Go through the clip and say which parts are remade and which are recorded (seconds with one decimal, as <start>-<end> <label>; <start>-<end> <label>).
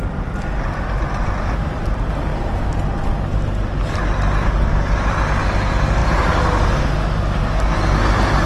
0.0-8.5 recorded